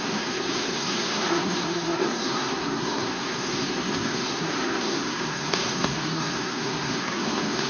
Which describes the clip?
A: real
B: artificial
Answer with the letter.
B